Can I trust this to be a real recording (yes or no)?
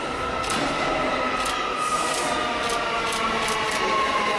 yes